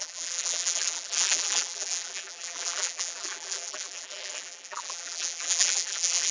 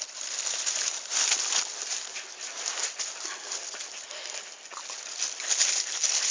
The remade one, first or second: first